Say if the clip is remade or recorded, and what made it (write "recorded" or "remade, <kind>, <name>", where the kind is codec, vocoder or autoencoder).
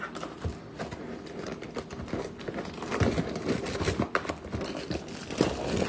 recorded